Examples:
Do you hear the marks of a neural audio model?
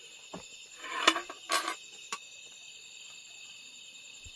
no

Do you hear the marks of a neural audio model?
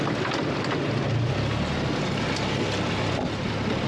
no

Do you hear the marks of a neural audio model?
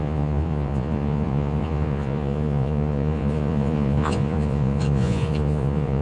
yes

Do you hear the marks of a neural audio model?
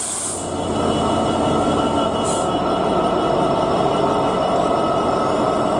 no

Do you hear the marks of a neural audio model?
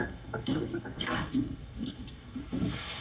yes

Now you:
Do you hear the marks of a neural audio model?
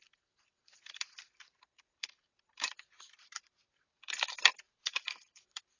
yes